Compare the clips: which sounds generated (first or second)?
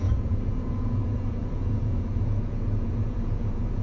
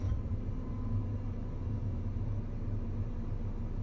first